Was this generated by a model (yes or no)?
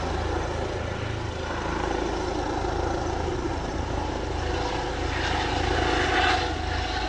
no